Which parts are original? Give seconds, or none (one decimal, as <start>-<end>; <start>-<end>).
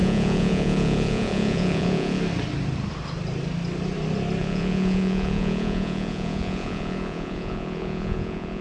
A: 2.2-4.4